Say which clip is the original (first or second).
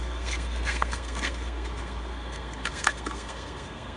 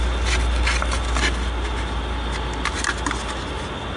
second